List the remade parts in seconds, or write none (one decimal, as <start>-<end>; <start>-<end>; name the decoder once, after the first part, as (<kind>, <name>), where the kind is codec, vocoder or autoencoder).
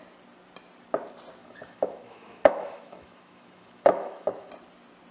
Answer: 1.4-4.5 (autoencoder, DAC-VAE)